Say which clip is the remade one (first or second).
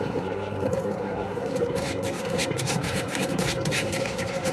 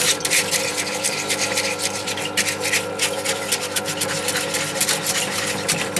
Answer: first